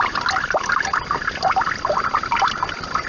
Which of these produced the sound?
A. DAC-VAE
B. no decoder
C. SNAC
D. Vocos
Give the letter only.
B